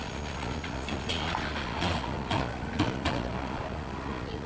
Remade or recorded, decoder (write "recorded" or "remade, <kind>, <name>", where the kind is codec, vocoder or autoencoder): remade, vocoder, Vocos